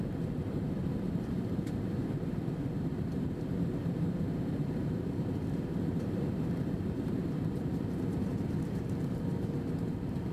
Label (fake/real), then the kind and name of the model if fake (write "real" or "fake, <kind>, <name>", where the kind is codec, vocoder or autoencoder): fake, vocoder, BigVGAN v2